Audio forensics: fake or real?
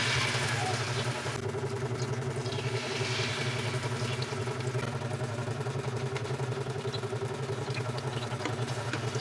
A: real